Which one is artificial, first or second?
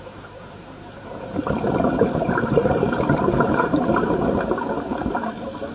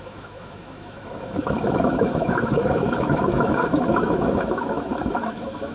second